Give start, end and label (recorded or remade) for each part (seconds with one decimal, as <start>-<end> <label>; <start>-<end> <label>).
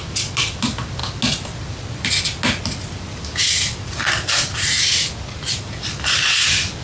0.0-6.8 recorded